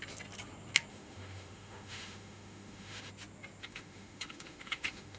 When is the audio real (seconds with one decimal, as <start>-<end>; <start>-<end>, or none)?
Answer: 0.0-0.9; 3.1-3.6